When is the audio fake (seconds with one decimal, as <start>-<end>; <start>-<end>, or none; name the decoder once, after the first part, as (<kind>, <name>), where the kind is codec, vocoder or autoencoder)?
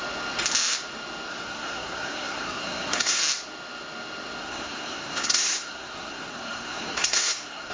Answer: 1.3-3.2 (codec, SNAC); 4.4-7.7